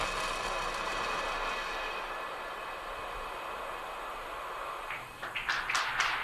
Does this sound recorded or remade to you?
recorded